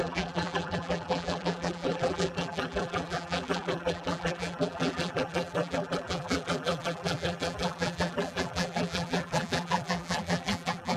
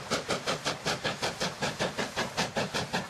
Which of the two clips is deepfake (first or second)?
first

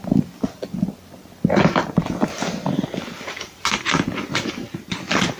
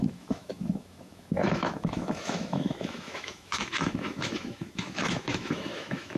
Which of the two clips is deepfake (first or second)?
second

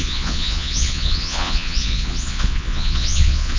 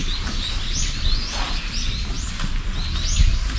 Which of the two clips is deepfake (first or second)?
first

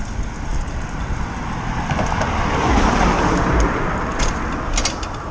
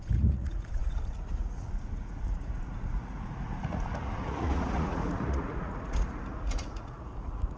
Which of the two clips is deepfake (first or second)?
second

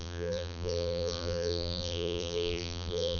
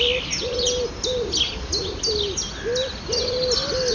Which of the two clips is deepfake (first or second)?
first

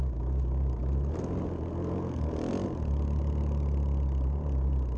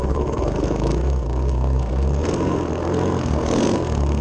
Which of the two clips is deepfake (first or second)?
second